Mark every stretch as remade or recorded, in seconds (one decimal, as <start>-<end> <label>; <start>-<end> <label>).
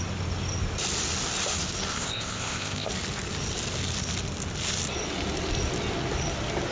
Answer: 0.0-1.9 recorded; 1.9-2.9 remade; 2.9-6.7 recorded